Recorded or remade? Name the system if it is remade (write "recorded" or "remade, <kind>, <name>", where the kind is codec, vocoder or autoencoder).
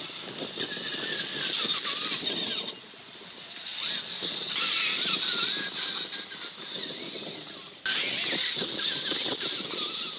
recorded